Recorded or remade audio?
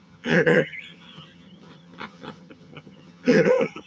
remade